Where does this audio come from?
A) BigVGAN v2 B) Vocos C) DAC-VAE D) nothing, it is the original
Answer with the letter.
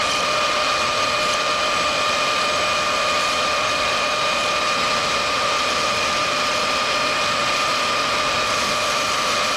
D